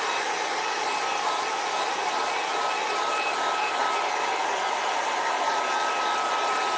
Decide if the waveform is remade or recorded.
recorded